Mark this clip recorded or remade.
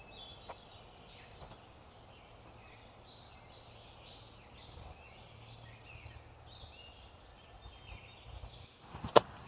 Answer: recorded